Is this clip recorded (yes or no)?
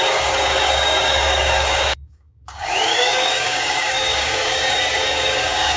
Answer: no